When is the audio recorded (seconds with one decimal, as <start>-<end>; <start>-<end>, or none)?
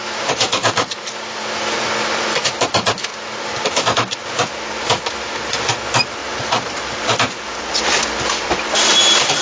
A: 0.0-9.4